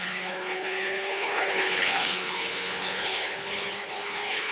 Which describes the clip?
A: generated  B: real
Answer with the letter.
A